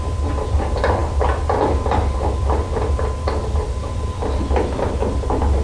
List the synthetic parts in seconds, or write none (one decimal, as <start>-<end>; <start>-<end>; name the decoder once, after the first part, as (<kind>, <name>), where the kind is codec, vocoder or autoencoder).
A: none